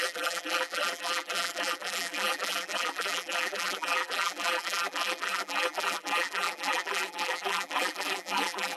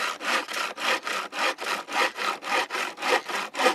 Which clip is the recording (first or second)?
second